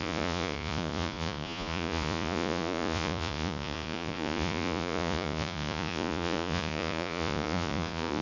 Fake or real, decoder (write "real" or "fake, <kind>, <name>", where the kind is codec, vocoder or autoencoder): fake, vocoder, Vocos